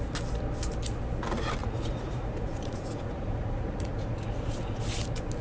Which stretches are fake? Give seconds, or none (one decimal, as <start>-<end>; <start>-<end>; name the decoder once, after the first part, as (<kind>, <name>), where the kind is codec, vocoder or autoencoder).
1.6-4.8 (vocoder, Vocos)